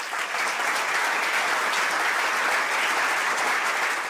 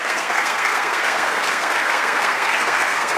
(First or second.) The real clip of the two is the first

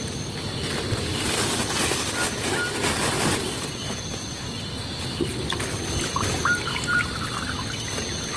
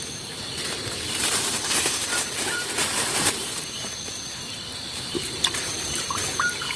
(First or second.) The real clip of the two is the first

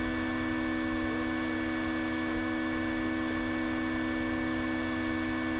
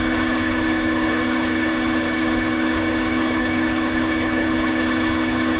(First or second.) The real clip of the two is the first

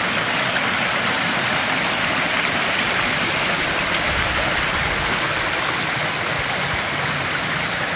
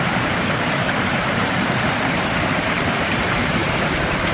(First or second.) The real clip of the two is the first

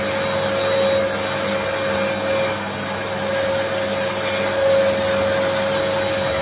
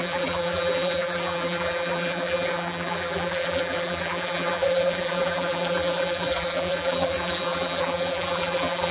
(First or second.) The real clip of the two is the first